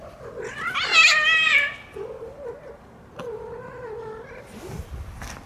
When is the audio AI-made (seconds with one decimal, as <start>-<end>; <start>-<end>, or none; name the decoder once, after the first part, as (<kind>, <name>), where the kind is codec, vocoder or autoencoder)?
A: none